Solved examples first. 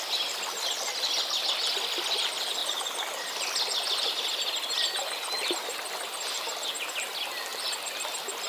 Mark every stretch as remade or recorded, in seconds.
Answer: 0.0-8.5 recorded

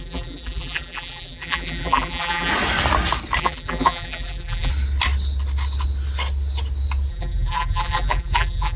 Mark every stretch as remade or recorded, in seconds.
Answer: 0.0-2.5 remade; 2.5-3.4 recorded; 3.4-4.7 remade; 4.7-7.1 recorded; 7.1-8.8 remade

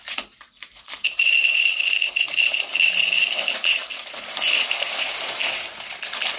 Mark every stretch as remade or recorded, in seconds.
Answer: 0.0-2.7 remade; 2.7-3.8 recorded; 3.8-6.4 remade

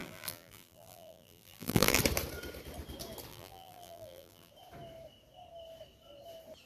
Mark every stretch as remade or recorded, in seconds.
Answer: 0.0-2.0 remade; 2.0-3.3 recorded; 3.3-4.5 remade; 4.5-6.7 recorded